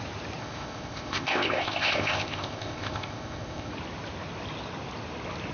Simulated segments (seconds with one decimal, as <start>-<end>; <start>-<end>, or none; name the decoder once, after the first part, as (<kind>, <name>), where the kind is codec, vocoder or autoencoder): 0.4-3.7 (codec, ZipCodec)